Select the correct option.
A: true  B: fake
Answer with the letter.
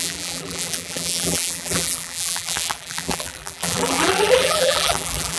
B